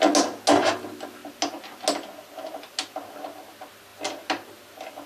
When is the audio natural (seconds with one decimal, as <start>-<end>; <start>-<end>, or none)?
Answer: 0.0-5.1

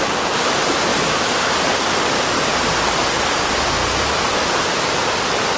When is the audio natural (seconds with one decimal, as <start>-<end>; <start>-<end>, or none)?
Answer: 0.0-0.9; 1.6-2.5; 4.3-5.6

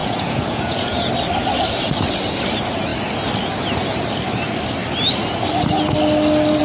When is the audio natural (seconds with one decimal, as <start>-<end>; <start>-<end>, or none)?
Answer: 1.1-6.6

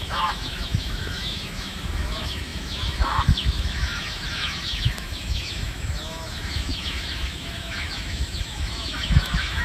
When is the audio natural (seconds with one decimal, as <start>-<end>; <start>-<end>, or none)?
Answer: none

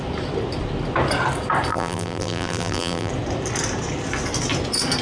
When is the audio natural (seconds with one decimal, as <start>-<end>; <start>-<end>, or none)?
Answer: 0.0-1.7; 3.1-5.0

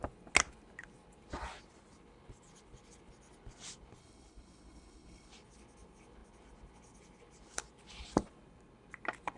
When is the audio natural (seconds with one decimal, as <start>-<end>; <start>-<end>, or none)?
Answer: 0.0-4.0; 5.3-9.4

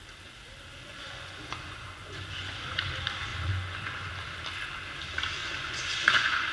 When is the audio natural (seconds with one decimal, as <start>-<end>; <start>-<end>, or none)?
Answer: 0.0-0.9; 2.9-3.3; 4.1-5.4